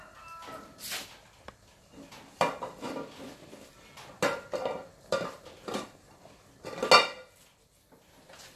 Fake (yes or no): no